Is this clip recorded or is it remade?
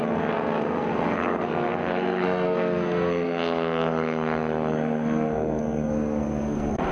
remade